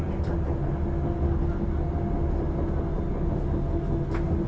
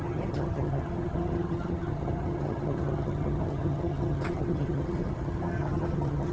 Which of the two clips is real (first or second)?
first